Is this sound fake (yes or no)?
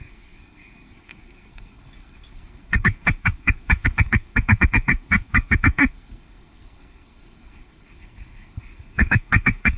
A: yes